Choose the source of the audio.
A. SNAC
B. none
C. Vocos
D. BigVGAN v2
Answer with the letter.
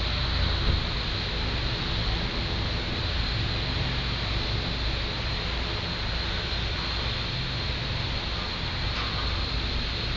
B